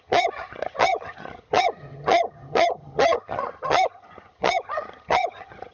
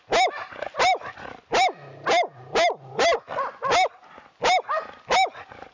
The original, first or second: second